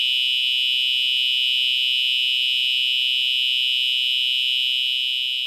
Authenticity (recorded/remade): recorded